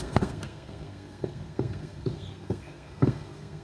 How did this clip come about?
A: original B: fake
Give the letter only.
B